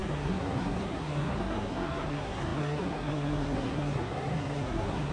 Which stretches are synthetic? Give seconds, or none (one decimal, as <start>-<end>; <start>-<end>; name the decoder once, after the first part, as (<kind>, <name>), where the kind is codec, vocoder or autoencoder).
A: 0.0-5.1 (codec, SNAC)

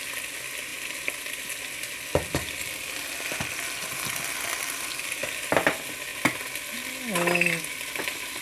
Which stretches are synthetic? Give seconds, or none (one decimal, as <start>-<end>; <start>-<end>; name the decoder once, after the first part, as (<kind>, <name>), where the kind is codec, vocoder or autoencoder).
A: none

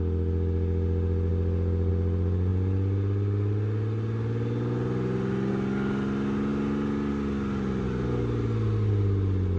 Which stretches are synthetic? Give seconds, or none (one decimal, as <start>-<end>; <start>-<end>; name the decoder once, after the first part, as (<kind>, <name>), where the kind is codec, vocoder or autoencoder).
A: none

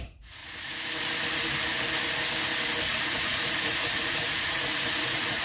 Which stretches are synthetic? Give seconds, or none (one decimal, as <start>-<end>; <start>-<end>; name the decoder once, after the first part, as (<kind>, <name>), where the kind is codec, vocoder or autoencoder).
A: 0.0-0.4 (vocoder, Vocos); 3.0-5.4